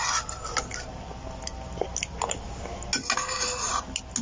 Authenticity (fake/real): real